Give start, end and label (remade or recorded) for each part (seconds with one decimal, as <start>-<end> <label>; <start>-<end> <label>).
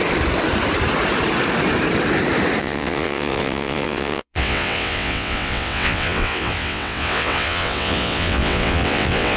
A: 0.0-2.6 recorded; 2.6-9.4 remade